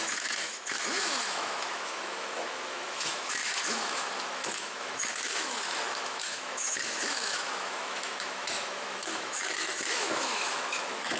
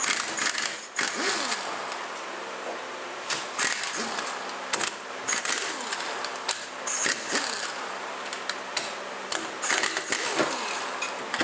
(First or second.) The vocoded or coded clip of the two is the first